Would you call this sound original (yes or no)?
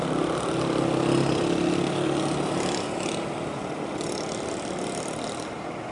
yes